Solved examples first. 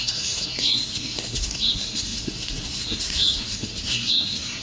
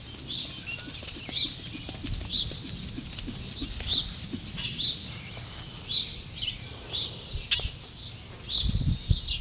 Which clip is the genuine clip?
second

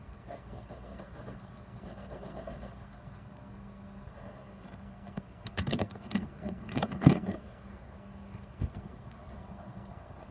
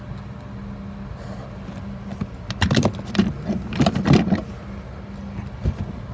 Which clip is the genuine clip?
second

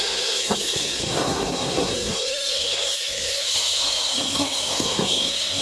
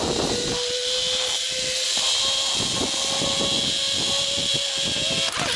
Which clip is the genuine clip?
second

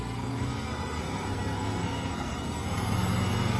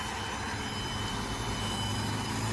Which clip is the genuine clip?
second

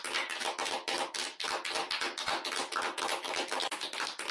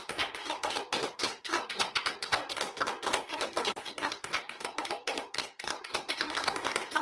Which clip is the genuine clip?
first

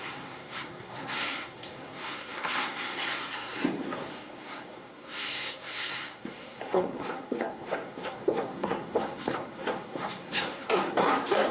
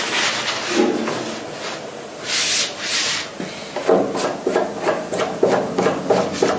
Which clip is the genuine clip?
second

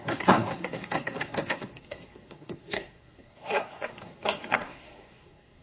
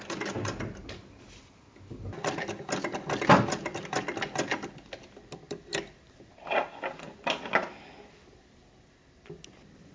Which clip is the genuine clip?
second